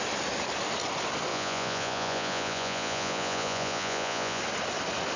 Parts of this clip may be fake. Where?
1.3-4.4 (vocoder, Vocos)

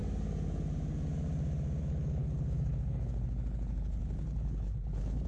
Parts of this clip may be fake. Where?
1.8-5.3 (codec, HILCodec)

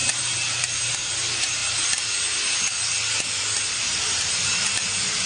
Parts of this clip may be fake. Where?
0.0-1.6 (vocoder, BigVGAN v2); 3.8-5.3

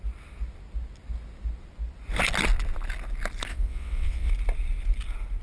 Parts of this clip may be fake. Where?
3.5-4.3 (vocoder, WaveNeXt)